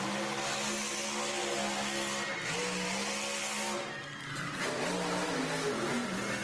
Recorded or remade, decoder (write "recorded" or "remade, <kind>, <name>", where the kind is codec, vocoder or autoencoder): recorded